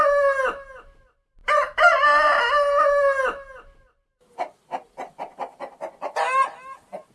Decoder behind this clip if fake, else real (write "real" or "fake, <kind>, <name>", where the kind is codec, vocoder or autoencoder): real